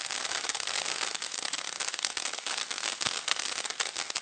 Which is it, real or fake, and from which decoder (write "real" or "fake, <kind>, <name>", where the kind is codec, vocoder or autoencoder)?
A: fake, codec, SNAC